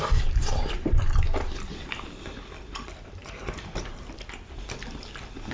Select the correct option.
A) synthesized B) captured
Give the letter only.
A